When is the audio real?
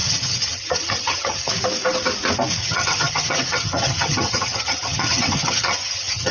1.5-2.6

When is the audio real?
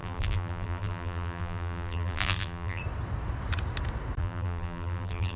2.8-4.2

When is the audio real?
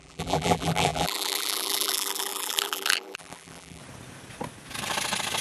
3.8-5.4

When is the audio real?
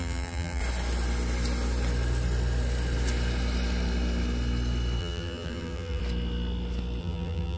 0.6-5.0; 6.0-7.0